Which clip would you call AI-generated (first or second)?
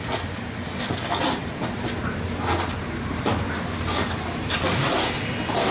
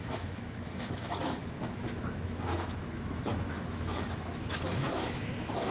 second